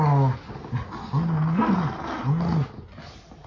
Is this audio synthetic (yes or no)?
no